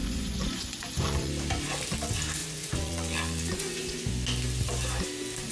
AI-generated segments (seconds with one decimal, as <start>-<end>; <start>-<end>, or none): 0.0-1.3; 2.4-4.1